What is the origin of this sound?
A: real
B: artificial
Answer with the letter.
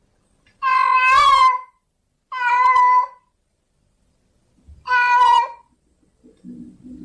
A